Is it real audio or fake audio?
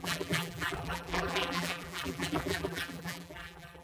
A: fake